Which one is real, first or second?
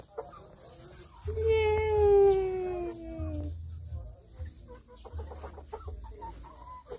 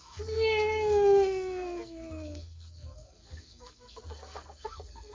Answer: first